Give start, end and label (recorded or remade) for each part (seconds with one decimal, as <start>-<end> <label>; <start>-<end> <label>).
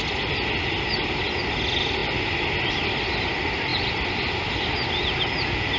0.0-5.8 recorded